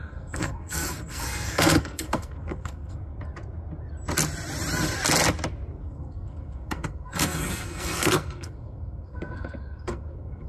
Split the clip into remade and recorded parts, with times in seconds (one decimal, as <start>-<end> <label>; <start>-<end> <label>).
0.0-3.1 remade; 3.1-5.8 recorded; 5.8-10.5 remade